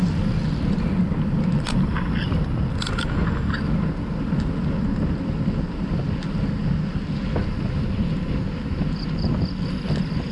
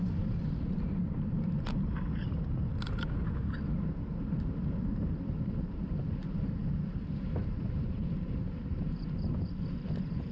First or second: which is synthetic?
second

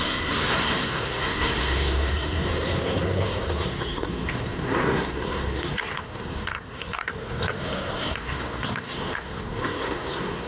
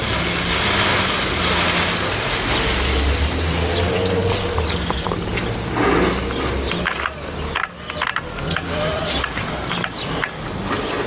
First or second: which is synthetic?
first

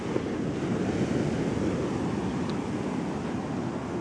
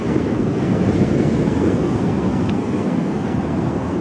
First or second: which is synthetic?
second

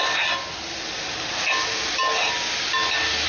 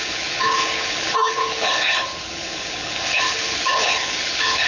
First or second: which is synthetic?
second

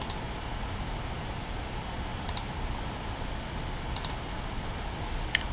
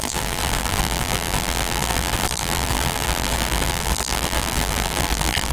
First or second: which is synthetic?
second